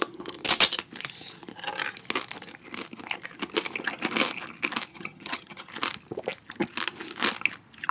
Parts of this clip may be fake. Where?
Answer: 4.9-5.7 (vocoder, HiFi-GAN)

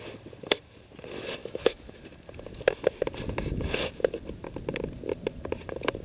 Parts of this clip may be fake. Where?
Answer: 1.4-2.0 (autoencoder, DAC-VAE)

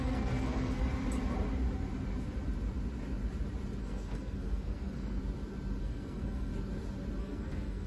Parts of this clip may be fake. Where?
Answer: 0.0-0.8 (codec, SNAC); 3.8-5.2; 5.8-6.5; 7.2-7.9

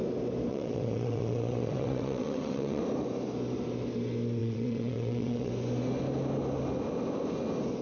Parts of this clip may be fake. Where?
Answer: 0.5-2.8 (vocoder, WaveNeXt); 4.4-5.5

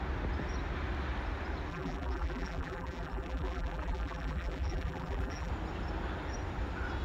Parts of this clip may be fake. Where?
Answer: 1.7-5.5 (vocoder, BigVGAN v2)

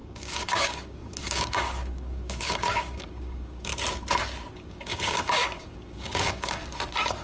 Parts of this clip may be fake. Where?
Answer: 0.0-3.7 (codec, DAC); 4.5-6.6

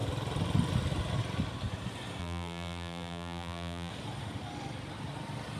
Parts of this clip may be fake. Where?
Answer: 2.2-3.9 (vocoder, BigVGAN v2)

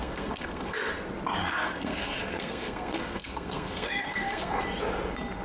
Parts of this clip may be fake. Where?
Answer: 0.0-0.9 (codec, SNAC); 1.4-4.6